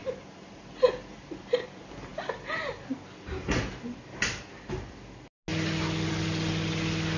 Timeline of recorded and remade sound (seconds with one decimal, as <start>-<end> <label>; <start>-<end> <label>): 0.0-7.2 recorded